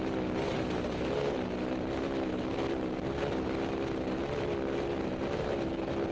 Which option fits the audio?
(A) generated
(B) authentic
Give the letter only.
B